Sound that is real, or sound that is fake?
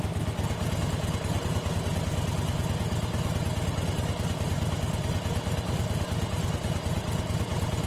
real